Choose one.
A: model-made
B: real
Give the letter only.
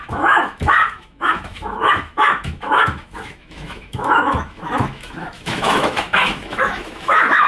A